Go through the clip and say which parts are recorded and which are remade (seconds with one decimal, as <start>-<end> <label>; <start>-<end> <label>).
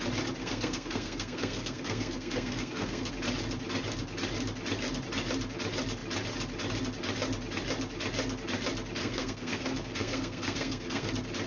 0.0-0.4 recorded; 0.4-3.1 remade; 3.1-9.0 recorded; 9.0-11.1 remade; 11.1-11.5 recorded